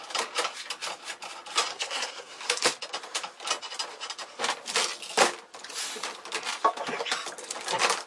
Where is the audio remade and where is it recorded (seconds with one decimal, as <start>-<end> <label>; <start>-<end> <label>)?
0.0-1.7 recorded; 1.7-2.4 remade; 2.4-8.1 recorded